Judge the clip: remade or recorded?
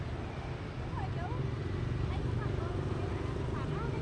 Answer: recorded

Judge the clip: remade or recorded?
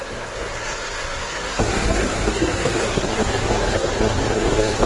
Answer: remade